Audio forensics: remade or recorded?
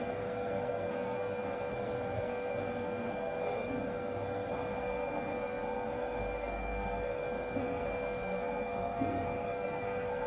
remade